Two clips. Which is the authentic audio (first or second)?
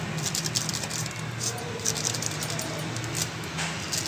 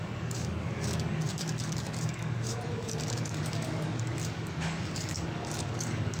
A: first